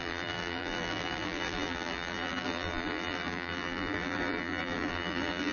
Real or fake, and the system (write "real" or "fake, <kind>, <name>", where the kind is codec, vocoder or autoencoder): fake, vocoder, BigVGAN v2